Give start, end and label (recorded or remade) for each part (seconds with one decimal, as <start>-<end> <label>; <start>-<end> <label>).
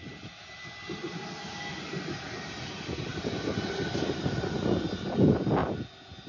0.0-6.3 recorded